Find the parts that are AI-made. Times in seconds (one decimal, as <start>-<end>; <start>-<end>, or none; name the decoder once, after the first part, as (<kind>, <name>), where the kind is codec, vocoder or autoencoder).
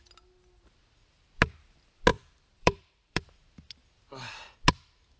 2.1-3.2 (vocoder, BigVGAN v2)